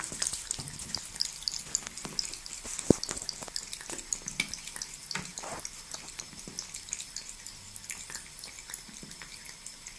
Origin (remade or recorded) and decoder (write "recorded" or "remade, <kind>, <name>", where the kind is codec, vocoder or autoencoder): recorded